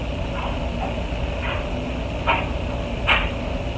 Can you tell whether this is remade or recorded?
recorded